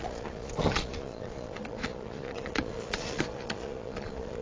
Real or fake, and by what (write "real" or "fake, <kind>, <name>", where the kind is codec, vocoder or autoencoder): fake, vocoder, Vocos